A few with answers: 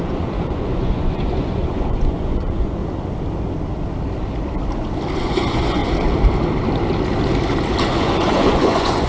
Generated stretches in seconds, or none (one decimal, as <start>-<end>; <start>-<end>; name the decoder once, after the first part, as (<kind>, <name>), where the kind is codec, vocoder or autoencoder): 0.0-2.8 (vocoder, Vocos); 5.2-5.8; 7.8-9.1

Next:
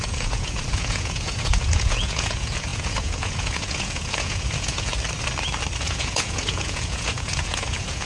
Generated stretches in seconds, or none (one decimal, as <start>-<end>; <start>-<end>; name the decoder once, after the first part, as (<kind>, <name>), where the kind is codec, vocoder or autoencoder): 0.0-4.9 (vocoder, Vocos); 5.8-8.1

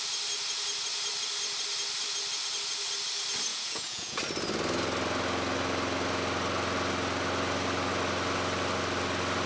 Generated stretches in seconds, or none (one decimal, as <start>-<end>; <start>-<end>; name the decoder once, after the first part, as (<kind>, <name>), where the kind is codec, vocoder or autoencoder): 3.5-4.2 (vocoder, Vocos)

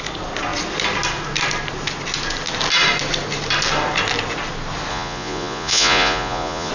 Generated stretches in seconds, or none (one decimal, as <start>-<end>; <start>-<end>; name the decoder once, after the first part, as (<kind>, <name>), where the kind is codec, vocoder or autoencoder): 4.9-6.7 (vocoder, Vocos)